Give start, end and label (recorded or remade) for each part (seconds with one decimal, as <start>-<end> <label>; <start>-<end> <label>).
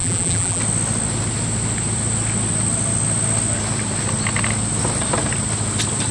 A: 0.0-0.6 remade; 0.6-6.1 recorded